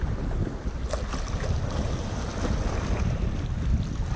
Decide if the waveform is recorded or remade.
recorded